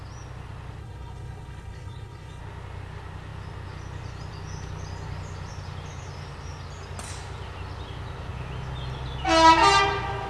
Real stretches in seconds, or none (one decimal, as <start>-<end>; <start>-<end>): 0.0-0.8; 2.4-10.3